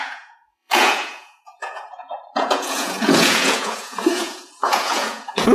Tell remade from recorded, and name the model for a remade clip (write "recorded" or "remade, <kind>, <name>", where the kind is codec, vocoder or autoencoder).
remade, vocoder, Vocos